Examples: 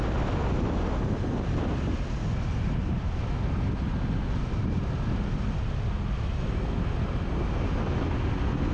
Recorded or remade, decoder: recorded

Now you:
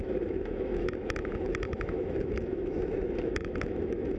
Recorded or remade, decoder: remade, autoencoder, DAC-VAE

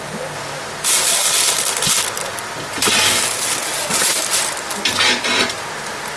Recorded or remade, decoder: recorded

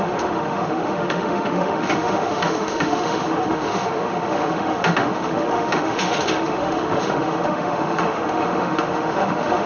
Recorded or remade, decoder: remade, autoencoder, DAC-VAE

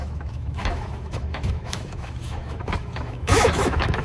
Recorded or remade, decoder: remade, autoencoder, DAC-VAE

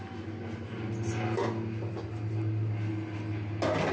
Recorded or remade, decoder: recorded